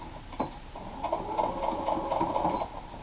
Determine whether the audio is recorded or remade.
recorded